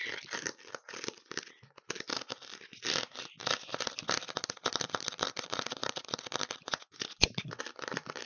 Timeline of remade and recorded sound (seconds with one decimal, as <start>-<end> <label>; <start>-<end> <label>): 0.0-6.6 recorded; 6.6-7.6 remade; 7.6-8.3 recorded